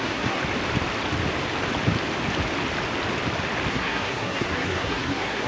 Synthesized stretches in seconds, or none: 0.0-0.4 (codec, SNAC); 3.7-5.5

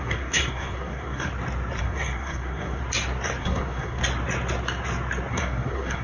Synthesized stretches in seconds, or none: 0.0-1.3 (codec, SNAC); 1.8-2.8; 3.4-4.0; 5.3-6.0